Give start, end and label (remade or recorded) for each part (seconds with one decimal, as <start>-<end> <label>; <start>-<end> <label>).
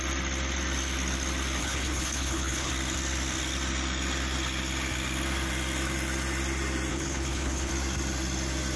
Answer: 0.0-1.6 recorded; 1.6-2.7 remade; 2.7-6.9 recorded; 6.9-7.7 remade; 7.7-8.8 recorded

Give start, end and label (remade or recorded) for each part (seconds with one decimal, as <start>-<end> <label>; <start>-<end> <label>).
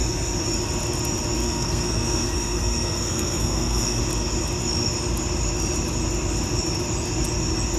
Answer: 0.0-1.4 recorded; 1.4-4.0 remade; 4.0-7.8 recorded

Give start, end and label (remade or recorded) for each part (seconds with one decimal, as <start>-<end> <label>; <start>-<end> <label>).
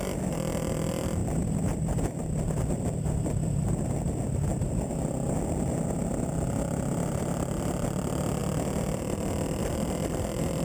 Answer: 0.0-1.2 remade; 1.2-4.1 recorded; 4.1-4.5 remade; 4.5-7.2 recorded; 7.2-8.4 remade; 8.4-9.6 recorded; 9.6-10.6 remade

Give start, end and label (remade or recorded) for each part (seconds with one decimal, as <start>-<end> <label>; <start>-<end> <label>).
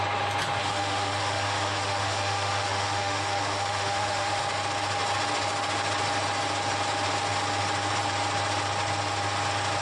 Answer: 0.0-0.6 recorded; 0.6-4.4 remade; 4.4-9.8 recorded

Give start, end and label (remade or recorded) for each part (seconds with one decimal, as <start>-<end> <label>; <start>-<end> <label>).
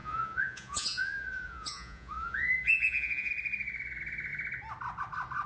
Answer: 0.0-3.3 remade; 3.3-5.5 recorded